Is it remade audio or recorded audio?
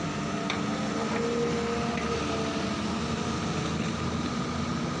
recorded